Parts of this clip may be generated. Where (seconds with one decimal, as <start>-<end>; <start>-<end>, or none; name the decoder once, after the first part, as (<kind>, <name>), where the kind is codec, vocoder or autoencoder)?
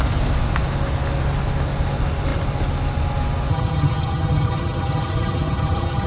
3.5-6.1 (vocoder, HiFi-GAN)